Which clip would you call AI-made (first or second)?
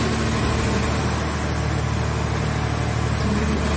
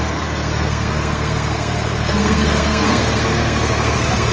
second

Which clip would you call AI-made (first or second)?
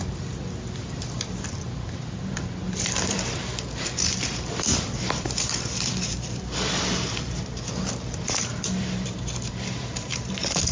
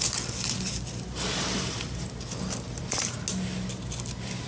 first